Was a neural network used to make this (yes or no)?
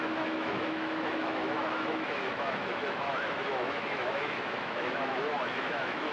yes